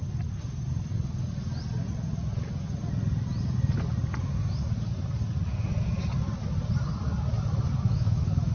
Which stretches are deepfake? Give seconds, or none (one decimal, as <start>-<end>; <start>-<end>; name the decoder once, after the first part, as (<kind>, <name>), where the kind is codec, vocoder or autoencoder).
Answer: 7.9-8.5 (autoencoder, DAC-VAE)